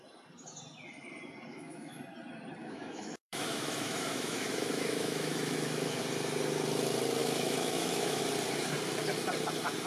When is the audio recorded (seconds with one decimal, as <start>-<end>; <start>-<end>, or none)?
0.0-1.5; 2.0-2.6; 6.0-7.2; 8.2-9.9